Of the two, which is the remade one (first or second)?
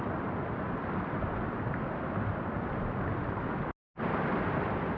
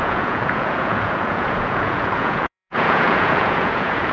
second